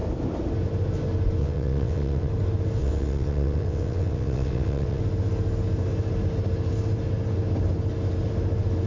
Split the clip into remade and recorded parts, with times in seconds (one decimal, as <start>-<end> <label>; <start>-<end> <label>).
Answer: 0.0-1.4 recorded; 1.4-2.3 remade; 2.3-2.8 recorded; 2.8-5.0 remade; 5.0-8.9 recorded